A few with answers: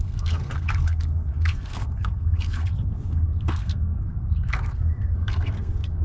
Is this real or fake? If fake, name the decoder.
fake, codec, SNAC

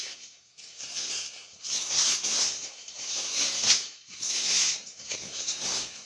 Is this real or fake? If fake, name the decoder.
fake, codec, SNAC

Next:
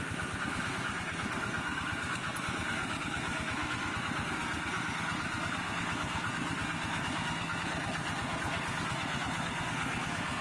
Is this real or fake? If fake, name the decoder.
fake, codec, SNAC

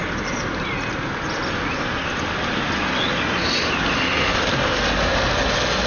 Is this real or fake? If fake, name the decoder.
real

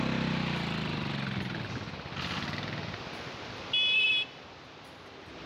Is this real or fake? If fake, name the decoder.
real